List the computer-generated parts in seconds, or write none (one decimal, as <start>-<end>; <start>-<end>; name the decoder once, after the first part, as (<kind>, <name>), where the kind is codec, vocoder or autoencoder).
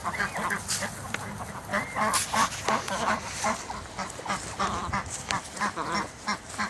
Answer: none